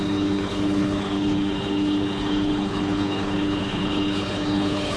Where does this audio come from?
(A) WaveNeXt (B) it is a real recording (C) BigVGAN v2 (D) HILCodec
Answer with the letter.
D